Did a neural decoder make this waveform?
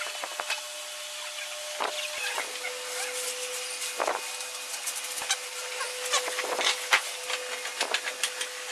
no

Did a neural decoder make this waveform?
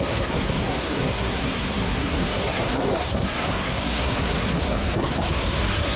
yes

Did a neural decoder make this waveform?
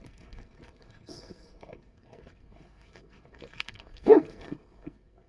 yes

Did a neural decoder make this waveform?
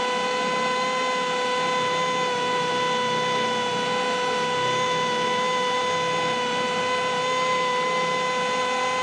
no